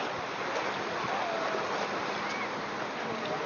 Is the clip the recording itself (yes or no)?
yes